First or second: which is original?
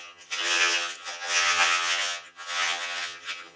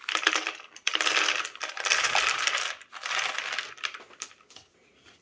second